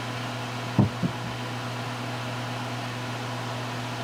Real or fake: real